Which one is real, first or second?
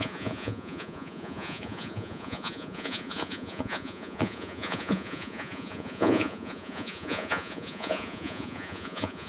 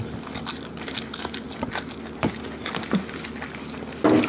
second